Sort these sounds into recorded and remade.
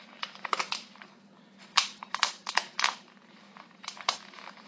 remade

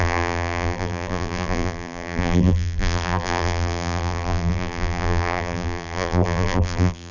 remade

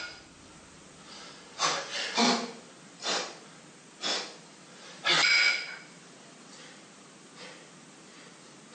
recorded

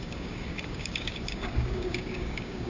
remade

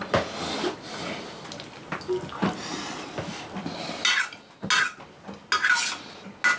recorded